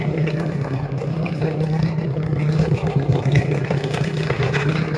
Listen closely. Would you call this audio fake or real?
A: fake